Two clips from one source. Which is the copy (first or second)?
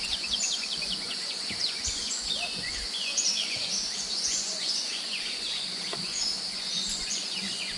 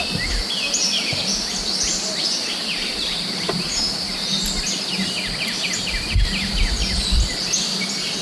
first